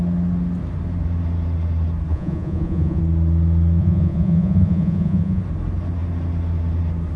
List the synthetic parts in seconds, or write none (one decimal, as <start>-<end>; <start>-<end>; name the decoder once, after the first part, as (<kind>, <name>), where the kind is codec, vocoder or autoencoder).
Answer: 2.1-3.0 (vocoder, Vocos); 3.8-5.4